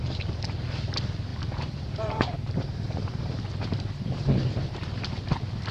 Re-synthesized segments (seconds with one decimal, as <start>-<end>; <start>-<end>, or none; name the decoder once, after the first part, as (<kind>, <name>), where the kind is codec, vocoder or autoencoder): 1.3-4.7 (vocoder, BigVGAN v2)